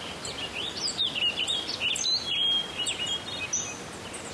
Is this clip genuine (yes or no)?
yes